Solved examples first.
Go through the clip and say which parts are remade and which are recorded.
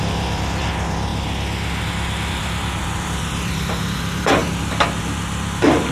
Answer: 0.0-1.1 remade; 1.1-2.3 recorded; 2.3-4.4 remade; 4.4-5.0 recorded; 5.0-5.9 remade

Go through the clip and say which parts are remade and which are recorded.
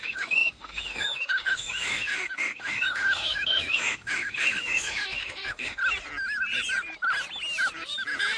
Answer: 0.0-5.8 remade; 5.8-8.4 recorded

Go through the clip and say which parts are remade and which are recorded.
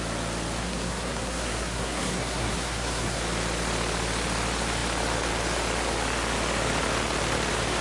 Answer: 0.0-0.6 recorded; 0.6-3.2 remade; 3.2-7.8 recorded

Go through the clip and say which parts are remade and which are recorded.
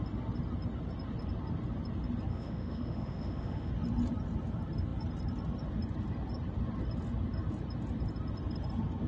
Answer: 0.0-2.3 recorded; 2.3-3.7 remade; 3.7-9.1 recorded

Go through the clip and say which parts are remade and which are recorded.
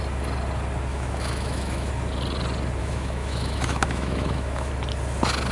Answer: 0.0-0.9 recorded; 0.9-1.9 remade; 1.9-2.8 recorded; 2.8-4.7 remade; 4.7-5.5 recorded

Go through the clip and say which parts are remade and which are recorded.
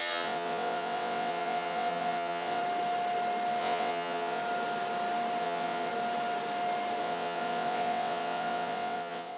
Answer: 0.0-2.6 remade; 2.6-3.6 recorded; 3.6-4.4 remade; 4.4-5.4 recorded; 5.4-5.9 remade; 5.9-7.0 recorded; 7.0-9.4 remade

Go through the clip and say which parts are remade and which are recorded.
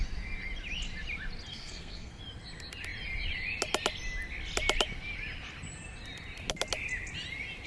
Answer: 0.0-1.5 recorded; 1.5-2.2 remade; 2.2-7.7 recorded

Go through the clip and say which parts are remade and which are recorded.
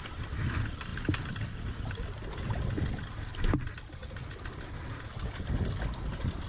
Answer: 0.0-6.5 recorded